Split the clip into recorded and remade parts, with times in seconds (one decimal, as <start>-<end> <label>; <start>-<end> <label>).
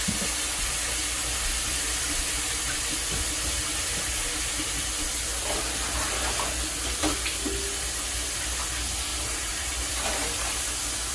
0.0-1.7 recorded; 1.7-2.8 remade; 2.8-9.1 recorded; 9.1-10.6 remade; 10.6-11.1 recorded